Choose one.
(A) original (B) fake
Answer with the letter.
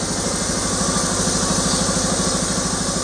A